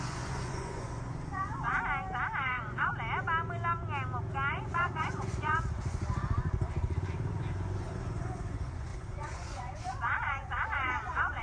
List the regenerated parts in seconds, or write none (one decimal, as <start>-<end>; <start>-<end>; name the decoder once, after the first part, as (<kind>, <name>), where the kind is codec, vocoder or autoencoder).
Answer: 0.0-1.7 (vocoder, Vocos); 2.4-2.9; 4.5-11.4

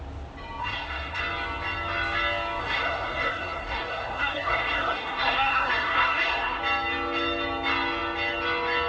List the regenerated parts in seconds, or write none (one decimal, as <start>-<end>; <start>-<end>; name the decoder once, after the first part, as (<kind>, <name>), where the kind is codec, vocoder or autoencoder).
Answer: 0.6-1.2 (codec, SNAC); 2.6-6.6

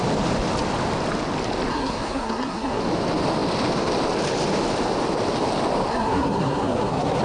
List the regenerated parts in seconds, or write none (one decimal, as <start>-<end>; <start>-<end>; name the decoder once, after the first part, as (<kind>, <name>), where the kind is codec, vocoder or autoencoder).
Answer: 1.7-2.8 (codec, SNAC); 5.9-7.2

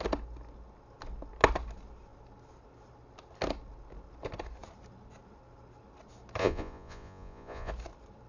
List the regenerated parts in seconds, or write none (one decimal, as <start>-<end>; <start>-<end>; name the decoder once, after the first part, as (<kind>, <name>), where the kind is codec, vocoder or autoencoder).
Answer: 6.4-7.7 (vocoder, Vocos)

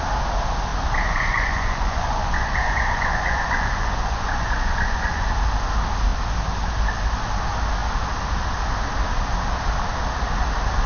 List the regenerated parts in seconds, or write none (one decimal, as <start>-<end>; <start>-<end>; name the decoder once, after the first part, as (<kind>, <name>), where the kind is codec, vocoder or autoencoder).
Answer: 0.7-5.3 (vocoder, Vocos)

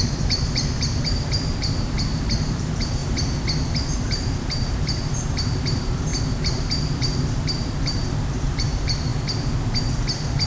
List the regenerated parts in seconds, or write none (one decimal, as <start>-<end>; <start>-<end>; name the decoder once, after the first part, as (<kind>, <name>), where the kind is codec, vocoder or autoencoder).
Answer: 0.0-3.0 (vocoder, BigVGAN v2); 3.6-9.1

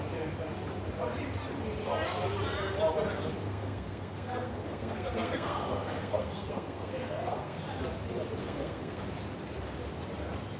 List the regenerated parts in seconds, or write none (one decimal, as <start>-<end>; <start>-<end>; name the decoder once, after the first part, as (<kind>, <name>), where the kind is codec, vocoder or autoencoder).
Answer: 3.4-7.6 (codec, SNAC); 8.4-9.0